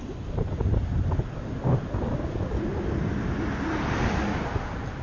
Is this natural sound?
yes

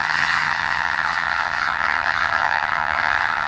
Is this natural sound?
no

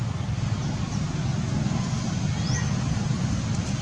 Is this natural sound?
yes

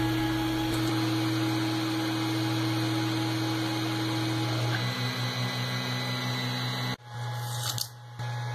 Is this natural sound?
yes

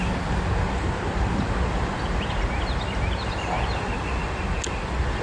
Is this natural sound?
yes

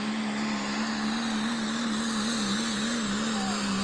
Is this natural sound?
yes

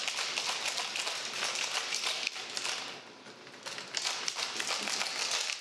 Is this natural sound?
yes